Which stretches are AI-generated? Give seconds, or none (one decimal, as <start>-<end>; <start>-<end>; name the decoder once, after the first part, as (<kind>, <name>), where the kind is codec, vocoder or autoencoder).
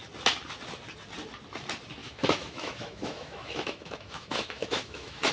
2.0-5.3 (autoencoder, DAC-VAE)